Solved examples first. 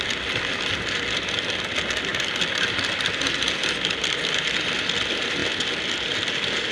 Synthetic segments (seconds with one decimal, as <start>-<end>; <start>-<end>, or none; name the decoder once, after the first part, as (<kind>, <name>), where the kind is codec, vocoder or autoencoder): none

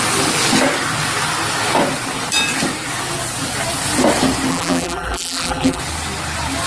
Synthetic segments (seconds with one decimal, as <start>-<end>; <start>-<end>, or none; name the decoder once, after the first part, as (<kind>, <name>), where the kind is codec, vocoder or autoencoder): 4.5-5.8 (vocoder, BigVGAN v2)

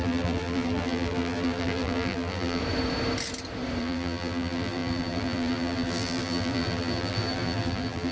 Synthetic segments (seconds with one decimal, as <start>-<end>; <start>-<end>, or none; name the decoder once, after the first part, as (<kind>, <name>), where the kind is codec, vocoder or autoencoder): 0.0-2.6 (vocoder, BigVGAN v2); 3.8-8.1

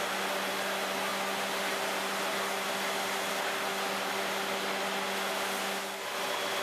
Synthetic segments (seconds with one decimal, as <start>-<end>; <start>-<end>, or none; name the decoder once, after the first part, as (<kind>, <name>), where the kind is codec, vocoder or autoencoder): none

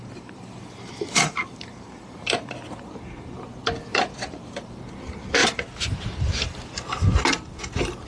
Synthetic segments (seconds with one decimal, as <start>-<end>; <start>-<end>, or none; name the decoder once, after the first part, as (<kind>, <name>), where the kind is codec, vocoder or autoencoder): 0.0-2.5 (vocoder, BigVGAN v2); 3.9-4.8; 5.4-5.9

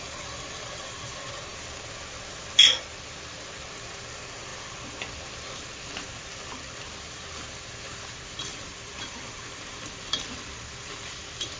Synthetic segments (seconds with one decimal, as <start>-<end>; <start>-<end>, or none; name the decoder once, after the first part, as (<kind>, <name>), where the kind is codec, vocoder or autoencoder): 8.5-10.2 (vocoder, BigVGAN v2)

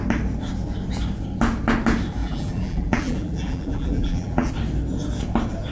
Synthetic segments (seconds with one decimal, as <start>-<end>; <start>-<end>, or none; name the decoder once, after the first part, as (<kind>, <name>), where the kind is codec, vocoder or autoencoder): 2.2-4.5 (vocoder, BigVGAN v2)

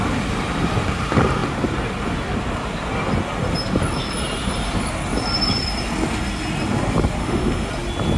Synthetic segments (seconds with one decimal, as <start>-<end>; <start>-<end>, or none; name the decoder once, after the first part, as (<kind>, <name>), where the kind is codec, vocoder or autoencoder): 7.2-7.7 (autoencoder, DAC-VAE)